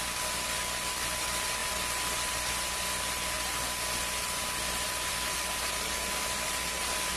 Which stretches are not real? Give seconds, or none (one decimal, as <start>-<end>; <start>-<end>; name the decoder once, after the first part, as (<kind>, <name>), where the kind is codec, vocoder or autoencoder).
none